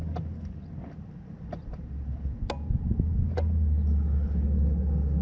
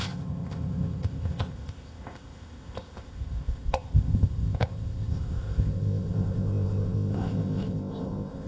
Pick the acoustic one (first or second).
first